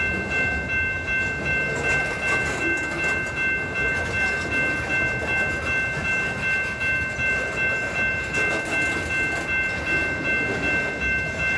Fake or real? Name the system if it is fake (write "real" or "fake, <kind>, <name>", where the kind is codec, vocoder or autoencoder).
real